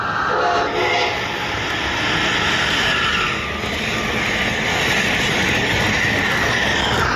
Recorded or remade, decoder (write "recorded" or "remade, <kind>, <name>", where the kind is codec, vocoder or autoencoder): recorded